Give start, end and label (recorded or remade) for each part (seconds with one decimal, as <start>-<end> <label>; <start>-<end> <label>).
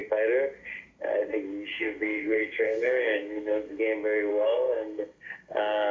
0.0-1.7 recorded; 1.7-3.8 remade; 3.8-4.3 recorded; 4.3-5.9 remade